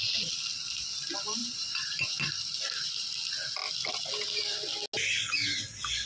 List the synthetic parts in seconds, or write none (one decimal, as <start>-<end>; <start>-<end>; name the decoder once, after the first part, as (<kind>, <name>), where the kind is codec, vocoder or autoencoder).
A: 1.4-2.3 (vocoder, Vocos)